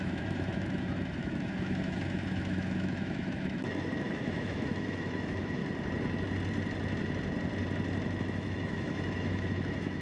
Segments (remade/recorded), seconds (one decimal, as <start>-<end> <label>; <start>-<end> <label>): 0.0-5.6 remade; 5.6-8.2 recorded; 8.2-10.0 remade